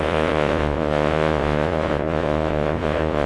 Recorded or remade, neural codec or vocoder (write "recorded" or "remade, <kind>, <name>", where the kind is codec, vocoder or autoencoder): remade, vocoder, Vocos